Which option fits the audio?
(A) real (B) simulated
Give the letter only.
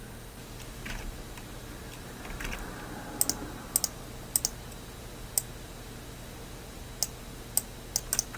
A